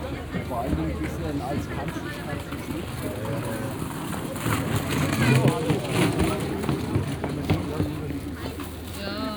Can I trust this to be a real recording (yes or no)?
yes